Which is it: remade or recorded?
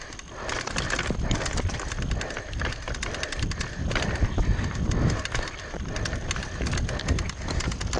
recorded